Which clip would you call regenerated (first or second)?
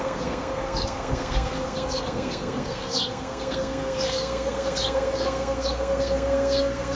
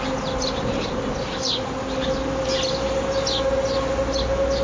first